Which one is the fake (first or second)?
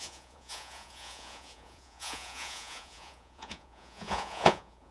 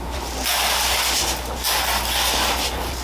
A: first